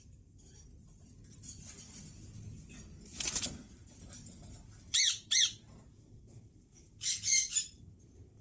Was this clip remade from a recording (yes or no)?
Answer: no